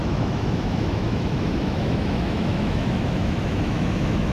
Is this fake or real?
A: fake